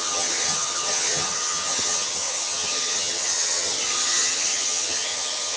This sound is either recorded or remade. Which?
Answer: remade